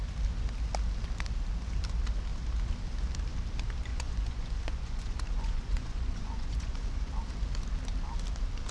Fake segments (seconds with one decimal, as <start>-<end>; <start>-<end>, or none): 3.9-7.1